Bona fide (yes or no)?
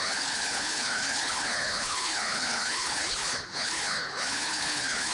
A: no